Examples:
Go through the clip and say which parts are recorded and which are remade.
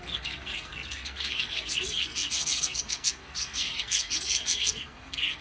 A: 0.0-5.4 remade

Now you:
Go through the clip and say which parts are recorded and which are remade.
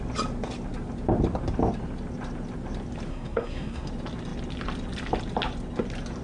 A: 0.0-3.1 recorded; 3.1-3.9 remade; 3.9-6.2 recorded